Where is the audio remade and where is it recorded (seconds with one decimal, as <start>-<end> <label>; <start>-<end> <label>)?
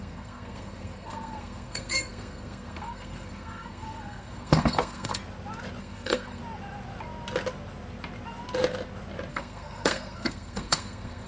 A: 0.0-5.2 remade; 5.2-5.8 recorded; 5.8-6.4 remade; 6.4-9.3 recorded; 9.3-11.3 remade